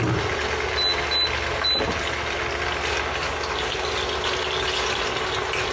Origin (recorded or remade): recorded